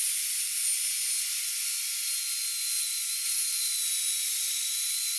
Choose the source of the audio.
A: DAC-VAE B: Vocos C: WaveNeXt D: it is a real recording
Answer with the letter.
D